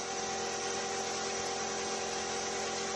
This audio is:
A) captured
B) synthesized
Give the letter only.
A